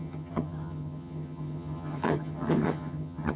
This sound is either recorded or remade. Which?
remade